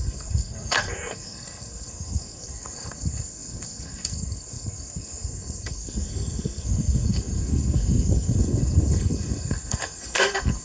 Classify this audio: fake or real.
fake